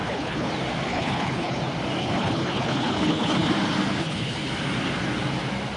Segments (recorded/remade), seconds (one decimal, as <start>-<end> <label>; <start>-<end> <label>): 0.0-0.5 remade; 0.5-0.9 recorded; 0.9-1.6 remade; 1.6-2.0 recorded; 2.0-3.5 remade; 3.5-4.0 recorded; 4.0-4.5 remade; 4.5-5.8 recorded